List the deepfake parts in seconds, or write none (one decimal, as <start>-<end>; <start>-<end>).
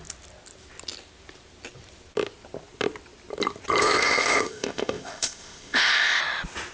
3.8-6.2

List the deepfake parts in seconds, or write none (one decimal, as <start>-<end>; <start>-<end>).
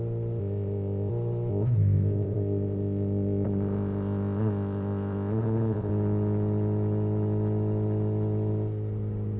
0.4-1.1; 1.5-5.9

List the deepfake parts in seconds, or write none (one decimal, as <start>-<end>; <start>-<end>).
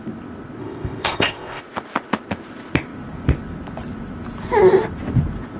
0.6-1.6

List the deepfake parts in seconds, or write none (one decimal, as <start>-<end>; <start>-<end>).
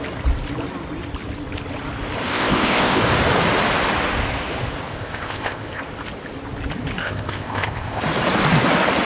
2.3-3.0; 4.9-5.8; 7.0-8.0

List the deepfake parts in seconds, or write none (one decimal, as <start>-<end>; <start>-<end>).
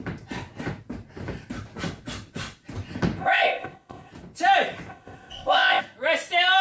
3.2-4.1; 4.9-5.8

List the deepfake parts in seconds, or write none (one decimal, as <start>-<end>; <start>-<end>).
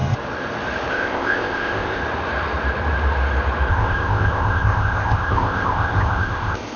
0.9-2.0; 3.7-6.8